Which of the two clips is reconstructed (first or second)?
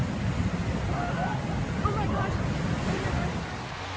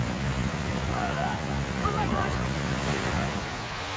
second